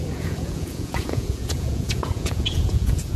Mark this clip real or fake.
fake